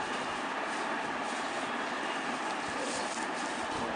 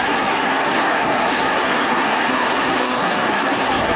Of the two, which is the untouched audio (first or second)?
first